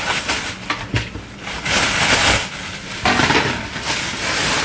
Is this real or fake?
real